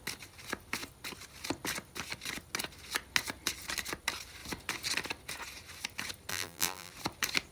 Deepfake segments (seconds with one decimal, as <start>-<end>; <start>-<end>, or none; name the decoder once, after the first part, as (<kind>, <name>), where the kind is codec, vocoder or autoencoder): 6.3-6.9 (vocoder, BigVGAN v2)